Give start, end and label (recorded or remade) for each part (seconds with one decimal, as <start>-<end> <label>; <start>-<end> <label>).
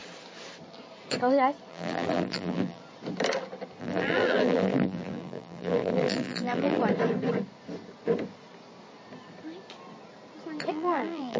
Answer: 0.0-1.7 recorded; 1.7-2.8 remade; 2.8-3.8 recorded; 3.8-6.8 remade; 6.8-10.7 recorded; 10.7-11.4 remade